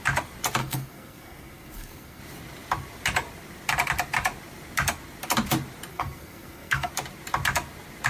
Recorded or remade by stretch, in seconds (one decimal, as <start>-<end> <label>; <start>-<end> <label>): 0.0-0.6 recorded; 0.6-2.2 remade; 2.2-5.9 recorded; 5.9-6.9 remade; 6.9-8.1 recorded